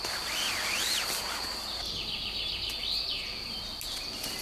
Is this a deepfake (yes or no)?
no